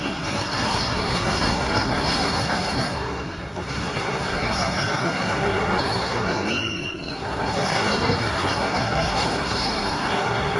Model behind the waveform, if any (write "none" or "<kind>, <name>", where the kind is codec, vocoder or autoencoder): codec, SNAC